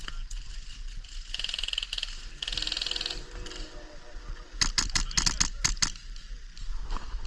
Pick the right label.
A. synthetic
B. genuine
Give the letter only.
B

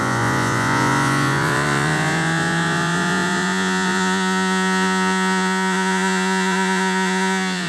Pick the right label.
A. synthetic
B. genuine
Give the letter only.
A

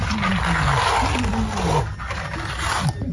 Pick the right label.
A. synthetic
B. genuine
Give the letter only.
B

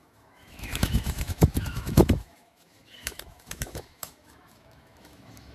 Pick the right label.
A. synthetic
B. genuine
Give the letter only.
A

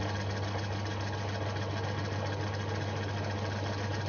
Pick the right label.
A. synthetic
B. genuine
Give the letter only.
B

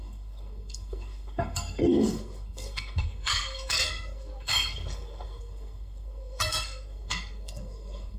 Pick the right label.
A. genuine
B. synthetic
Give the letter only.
B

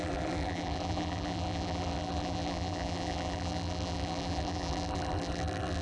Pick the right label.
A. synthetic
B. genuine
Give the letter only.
A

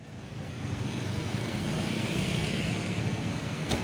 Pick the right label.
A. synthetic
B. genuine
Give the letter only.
A